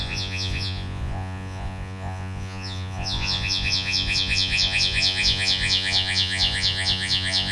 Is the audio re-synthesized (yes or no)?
yes